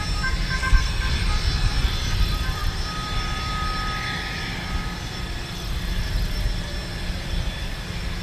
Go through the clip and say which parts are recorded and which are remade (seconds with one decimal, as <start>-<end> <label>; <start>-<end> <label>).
0.0-0.6 recorded; 0.6-1.1 remade; 1.1-8.2 recorded